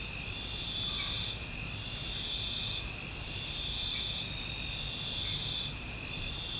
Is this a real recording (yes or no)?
yes